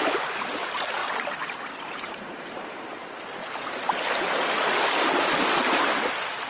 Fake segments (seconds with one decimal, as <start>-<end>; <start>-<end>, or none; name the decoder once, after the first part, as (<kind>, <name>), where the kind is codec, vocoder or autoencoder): 0.0-1.0 (vocoder, BigVGAN v2); 1.8-3.4; 5.6-6.5